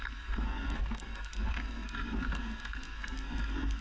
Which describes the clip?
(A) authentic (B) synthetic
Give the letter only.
B